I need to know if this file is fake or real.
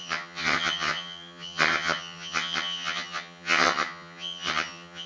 fake